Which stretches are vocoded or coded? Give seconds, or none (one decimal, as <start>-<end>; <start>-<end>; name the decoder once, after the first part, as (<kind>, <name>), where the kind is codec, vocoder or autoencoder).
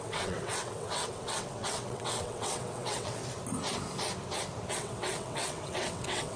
0.0-3.2 (vocoder, WaveNeXt); 4.7-6.4